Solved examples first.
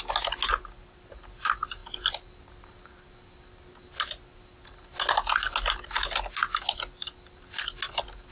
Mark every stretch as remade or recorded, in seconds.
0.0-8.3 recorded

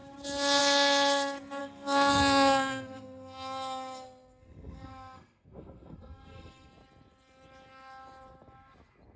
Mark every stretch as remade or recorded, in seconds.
0.0-1.6 recorded; 1.6-6.7 remade; 6.7-9.2 recorded

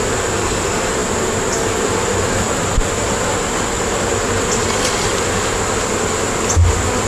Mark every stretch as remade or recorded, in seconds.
0.0-7.1 recorded

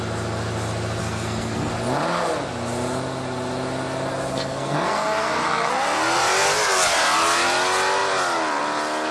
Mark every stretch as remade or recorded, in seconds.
0.0-1.0 recorded; 1.0-1.7 remade; 1.7-4.3 recorded; 4.3-5.7 remade; 5.7-9.1 recorded